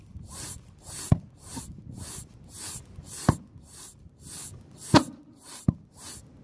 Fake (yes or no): no